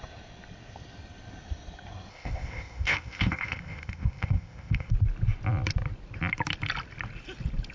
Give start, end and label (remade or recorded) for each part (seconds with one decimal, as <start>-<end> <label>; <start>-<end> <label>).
0.0-2.1 recorded; 2.1-4.9 remade; 4.9-7.7 recorded